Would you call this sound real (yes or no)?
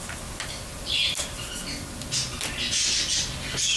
yes